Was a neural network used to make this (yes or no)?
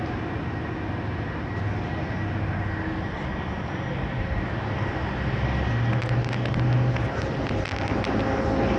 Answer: no